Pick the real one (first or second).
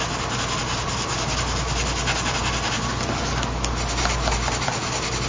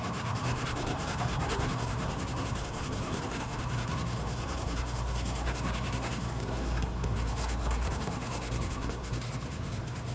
first